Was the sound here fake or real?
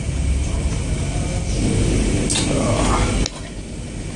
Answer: real